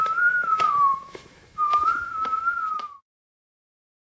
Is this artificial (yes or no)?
yes